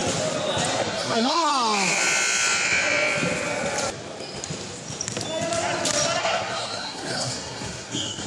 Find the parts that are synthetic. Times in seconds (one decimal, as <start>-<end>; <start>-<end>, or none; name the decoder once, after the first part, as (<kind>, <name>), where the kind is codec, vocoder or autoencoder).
0.7-1.5 (codec, SNAC); 6.2-8.3